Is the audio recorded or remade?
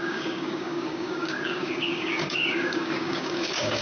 remade